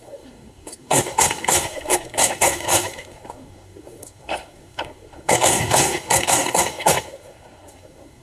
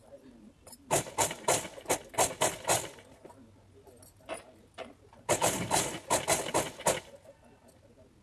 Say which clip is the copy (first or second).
first